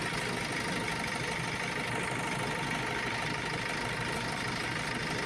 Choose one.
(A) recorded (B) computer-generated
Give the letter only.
A